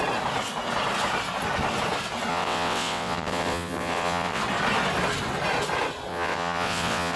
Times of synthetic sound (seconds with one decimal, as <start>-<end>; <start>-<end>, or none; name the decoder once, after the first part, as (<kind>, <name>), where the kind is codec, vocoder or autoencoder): 2.3-4.4 (vocoder, WaveNeXt); 6.1-7.2